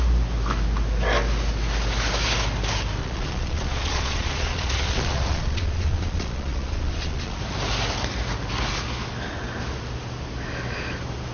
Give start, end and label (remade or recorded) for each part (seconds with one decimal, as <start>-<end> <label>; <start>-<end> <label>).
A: 0.0-3.0 recorded; 3.0-7.4 remade; 7.4-11.3 recorded